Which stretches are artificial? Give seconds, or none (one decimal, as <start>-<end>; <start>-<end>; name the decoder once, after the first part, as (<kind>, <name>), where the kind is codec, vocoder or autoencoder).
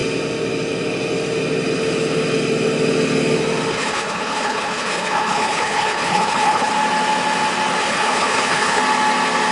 3.7-6.7 (codec, HILCodec); 7.8-8.8